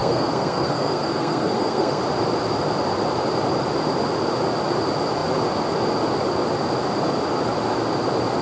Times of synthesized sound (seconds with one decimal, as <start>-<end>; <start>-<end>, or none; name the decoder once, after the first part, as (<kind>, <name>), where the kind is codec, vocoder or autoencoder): 0.0-2.0 (codec, SNAC)